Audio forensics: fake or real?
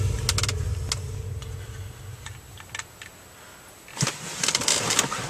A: real